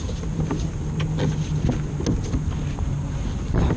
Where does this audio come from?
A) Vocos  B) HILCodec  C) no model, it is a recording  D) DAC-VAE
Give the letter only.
C